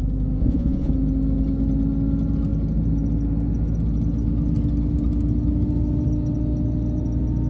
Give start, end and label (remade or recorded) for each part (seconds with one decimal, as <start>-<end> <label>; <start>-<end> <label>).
0.0-0.4 recorded; 0.4-0.9 remade; 0.9-7.5 recorded